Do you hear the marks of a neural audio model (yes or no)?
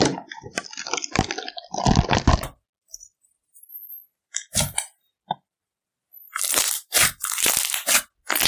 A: no